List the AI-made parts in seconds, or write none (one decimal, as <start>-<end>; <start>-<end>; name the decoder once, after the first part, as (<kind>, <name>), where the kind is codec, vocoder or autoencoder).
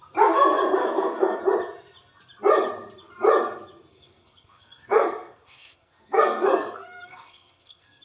0.8-1.4 (codec, SNAC); 3.9-8.0